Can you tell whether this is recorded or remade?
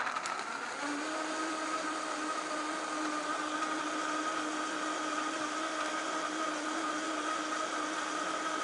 recorded